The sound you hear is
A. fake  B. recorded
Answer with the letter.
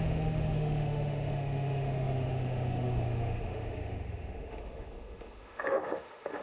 A